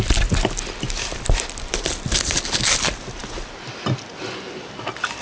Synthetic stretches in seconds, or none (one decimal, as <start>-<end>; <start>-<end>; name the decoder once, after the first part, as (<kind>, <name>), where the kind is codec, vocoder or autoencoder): none